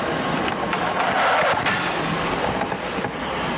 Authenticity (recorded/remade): recorded